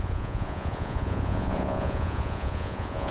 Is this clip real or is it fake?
fake